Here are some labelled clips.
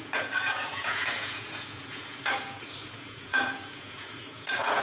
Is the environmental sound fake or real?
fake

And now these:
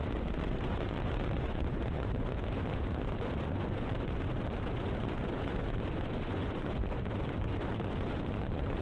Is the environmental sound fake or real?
fake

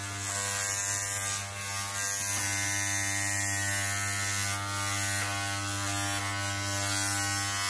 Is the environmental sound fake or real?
real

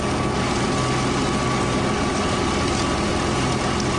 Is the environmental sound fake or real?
real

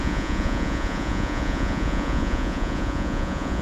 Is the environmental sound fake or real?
fake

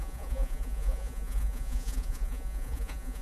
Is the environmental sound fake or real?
fake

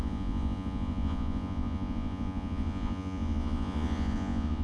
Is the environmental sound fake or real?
fake